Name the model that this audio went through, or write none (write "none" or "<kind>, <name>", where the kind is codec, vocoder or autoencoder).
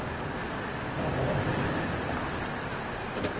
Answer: none